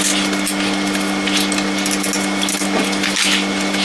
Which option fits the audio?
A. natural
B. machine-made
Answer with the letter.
A